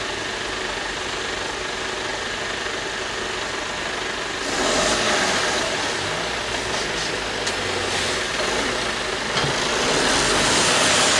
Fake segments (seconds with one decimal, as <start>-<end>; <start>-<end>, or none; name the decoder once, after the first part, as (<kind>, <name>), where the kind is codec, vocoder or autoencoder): none